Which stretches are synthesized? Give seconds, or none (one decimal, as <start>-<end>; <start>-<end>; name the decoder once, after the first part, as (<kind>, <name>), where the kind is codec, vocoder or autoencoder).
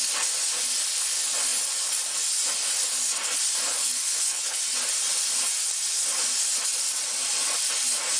3.8-4.6 (codec, HILCodec)